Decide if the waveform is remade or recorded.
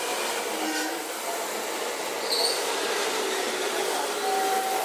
recorded